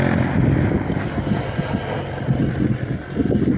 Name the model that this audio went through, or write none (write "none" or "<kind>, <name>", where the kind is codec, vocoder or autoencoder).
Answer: none